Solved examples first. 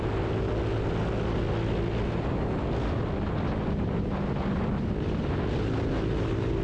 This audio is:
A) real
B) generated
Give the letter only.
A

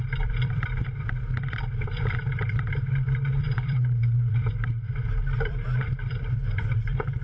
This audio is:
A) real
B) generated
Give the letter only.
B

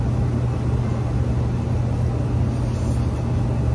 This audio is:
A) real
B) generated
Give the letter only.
A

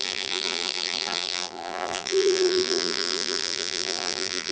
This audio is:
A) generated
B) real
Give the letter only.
A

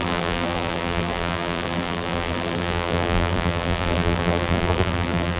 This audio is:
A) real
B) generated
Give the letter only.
B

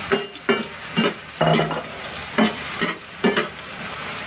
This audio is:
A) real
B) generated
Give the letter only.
A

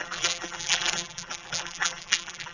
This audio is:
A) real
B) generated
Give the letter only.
B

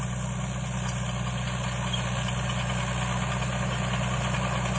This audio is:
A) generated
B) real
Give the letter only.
B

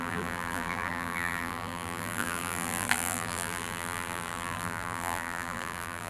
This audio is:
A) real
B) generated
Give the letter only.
B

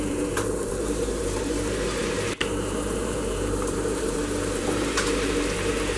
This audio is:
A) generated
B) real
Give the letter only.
A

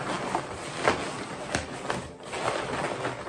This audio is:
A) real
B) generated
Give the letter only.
A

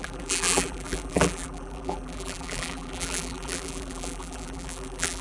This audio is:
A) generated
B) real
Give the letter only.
A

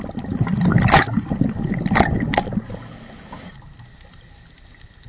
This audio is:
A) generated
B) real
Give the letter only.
B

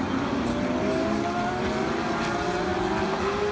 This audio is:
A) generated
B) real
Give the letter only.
B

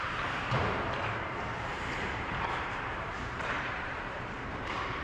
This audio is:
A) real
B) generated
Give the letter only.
B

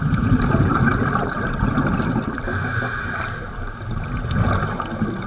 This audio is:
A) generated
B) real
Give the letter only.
B